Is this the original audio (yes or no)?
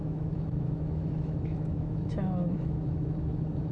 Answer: no